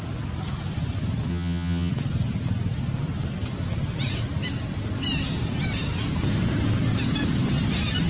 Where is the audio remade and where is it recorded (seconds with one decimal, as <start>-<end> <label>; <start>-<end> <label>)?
0.0-1.3 recorded; 1.3-1.9 remade; 1.9-8.1 recorded